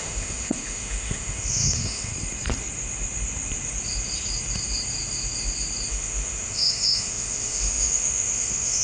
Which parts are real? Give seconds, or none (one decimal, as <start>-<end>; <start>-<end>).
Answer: 2.1-5.9